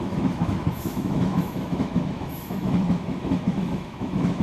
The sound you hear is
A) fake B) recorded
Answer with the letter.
A